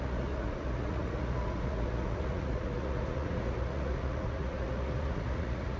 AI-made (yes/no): yes